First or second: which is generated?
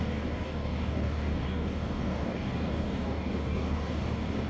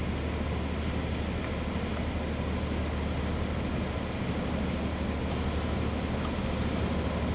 first